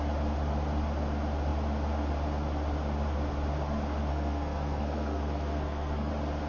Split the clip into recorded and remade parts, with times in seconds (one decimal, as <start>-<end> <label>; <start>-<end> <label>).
0.0-4.1 recorded; 4.1-6.1 remade; 6.1-6.5 recorded